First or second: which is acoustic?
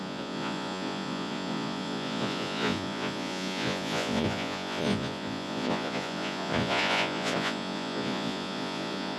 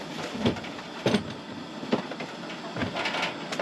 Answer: second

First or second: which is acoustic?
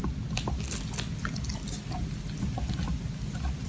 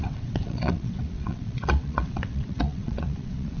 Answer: first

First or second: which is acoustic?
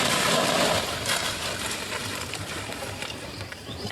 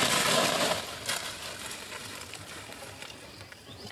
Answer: second